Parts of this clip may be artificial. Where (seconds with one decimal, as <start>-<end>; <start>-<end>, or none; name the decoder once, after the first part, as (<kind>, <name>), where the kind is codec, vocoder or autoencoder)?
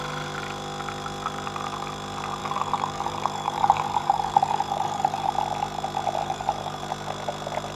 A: 2.4-5.3 (codec, DAC); 6.2-6.8